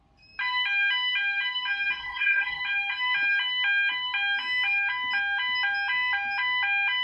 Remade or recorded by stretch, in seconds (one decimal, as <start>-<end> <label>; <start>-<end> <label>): 0.0-2.0 recorded; 2.0-2.6 remade; 2.6-7.0 recorded